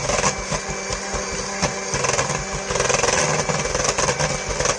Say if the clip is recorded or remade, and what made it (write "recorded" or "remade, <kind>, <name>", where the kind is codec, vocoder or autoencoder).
recorded